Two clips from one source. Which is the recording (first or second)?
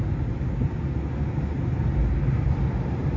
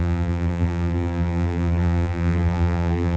first